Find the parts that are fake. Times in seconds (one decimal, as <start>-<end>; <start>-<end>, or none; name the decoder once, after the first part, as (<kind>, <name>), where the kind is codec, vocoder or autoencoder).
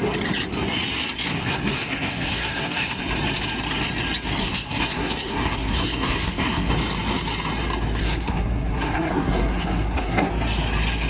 1.3-3.0 (codec, SNAC); 4.4-6.7; 8.0-10.3